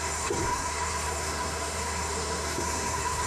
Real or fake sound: fake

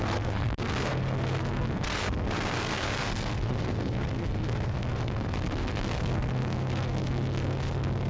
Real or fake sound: fake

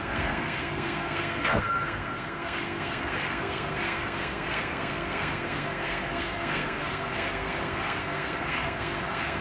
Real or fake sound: fake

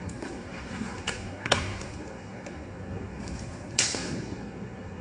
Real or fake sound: fake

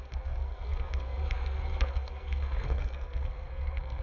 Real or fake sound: fake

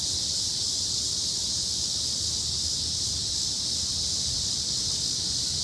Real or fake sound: real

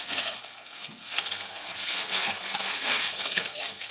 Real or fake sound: fake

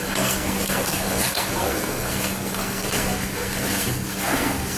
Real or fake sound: fake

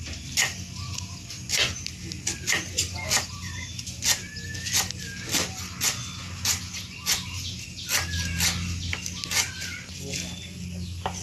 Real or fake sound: real